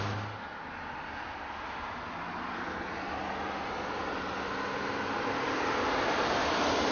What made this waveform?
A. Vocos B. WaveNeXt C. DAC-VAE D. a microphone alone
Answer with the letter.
D